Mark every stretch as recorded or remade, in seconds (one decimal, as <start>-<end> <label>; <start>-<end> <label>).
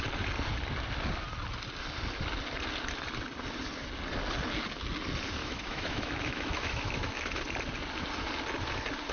0.0-5.4 recorded; 5.4-7.4 remade; 7.4-9.1 recorded